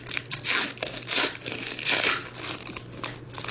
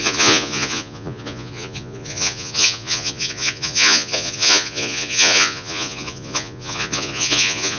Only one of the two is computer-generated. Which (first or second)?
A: second